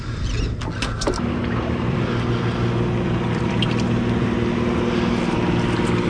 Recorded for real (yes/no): yes